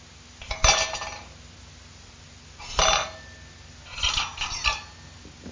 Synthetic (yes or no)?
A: no